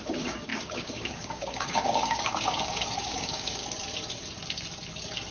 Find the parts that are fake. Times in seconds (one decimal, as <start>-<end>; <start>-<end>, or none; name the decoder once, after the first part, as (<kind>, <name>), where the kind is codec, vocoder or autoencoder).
0.0-3.6 (codec, DAC)